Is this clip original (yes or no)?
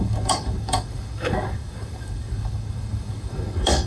no